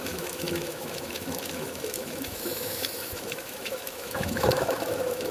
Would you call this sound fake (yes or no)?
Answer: yes